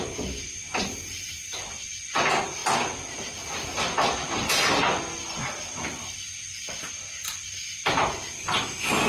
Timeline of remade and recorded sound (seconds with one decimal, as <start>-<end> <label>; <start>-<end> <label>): 0.0-9.1 recorded